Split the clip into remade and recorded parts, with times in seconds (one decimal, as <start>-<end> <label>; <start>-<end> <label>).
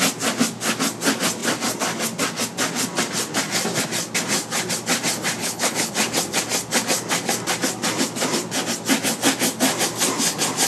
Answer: 0.0-5.4 recorded; 5.4-5.9 remade; 5.9-10.7 recorded